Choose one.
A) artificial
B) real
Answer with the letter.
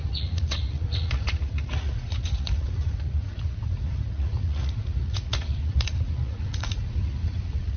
A